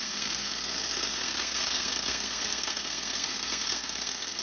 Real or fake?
fake